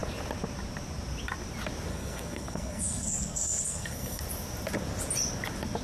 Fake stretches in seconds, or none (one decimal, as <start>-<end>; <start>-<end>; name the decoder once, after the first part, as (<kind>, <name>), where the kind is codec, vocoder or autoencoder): 1.9-4.2 (codec, SNAC)